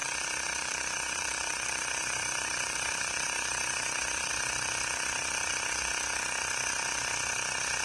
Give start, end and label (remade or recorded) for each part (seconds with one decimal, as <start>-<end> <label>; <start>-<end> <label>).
0.0-4.3 remade; 4.3-7.8 recorded